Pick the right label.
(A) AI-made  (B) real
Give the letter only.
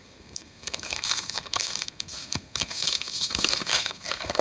A